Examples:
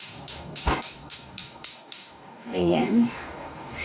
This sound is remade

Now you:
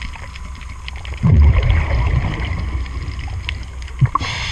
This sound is recorded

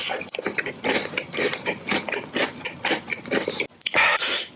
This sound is recorded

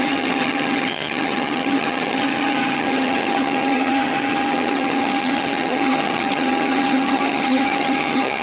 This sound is remade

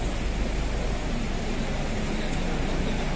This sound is recorded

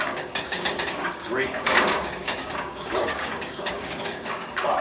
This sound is remade